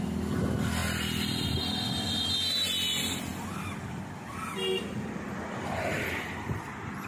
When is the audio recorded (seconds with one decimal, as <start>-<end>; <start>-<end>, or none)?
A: 0.0-7.1